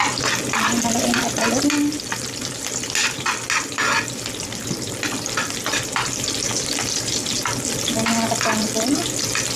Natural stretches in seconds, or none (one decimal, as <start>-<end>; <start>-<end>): 0.0-9.6